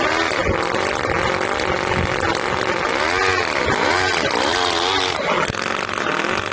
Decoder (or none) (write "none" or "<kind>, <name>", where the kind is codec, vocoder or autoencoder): none